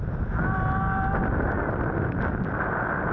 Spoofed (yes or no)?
no